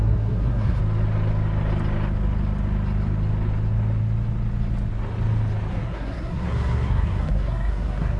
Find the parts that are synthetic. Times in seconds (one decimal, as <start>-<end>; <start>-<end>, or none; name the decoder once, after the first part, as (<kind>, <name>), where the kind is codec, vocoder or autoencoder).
0.0-0.8 (codec, SNAC); 5.7-8.2